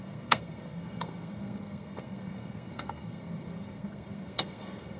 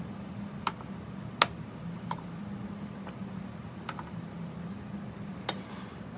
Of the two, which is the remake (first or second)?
first